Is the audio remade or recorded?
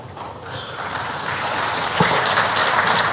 recorded